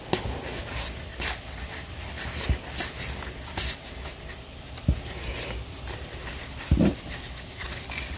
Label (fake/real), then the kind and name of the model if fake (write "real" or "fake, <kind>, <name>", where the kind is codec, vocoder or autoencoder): fake, vocoder, BigVGAN v2